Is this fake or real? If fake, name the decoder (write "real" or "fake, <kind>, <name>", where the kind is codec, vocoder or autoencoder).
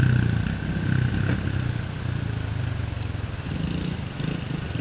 real